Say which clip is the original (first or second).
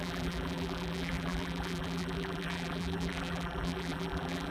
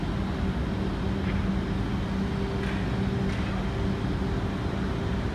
second